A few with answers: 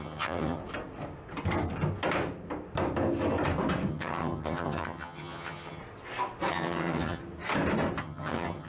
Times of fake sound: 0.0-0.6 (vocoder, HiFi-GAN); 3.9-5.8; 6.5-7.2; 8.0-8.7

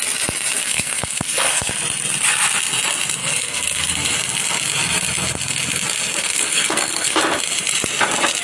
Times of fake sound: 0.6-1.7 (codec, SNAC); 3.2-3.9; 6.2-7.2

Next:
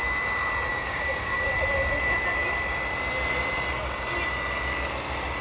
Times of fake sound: 0.7-1.5 (codec, DAC)

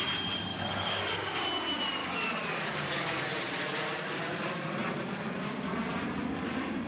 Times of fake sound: 0.5-1.4 (codec, DAC); 2.0-3.2